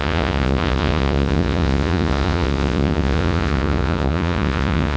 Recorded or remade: remade